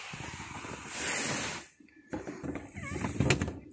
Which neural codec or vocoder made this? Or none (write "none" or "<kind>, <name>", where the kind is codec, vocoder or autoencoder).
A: none